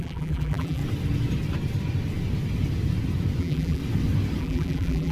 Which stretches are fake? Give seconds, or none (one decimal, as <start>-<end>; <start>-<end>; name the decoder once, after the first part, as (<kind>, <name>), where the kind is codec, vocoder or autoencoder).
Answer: 0.0-0.8 (vocoder, BigVGAN v2); 3.4-3.8; 4.4-5.1